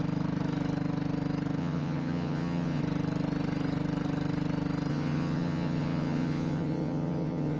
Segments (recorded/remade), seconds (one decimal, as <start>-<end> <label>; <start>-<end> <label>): 0.0-1.6 recorded; 1.6-2.8 remade; 2.8-4.9 recorded; 4.9-7.6 remade